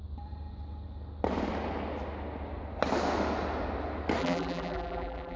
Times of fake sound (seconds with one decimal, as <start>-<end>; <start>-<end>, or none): 4.2-5.4